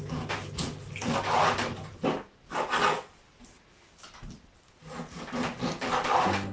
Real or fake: real